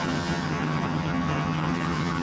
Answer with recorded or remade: remade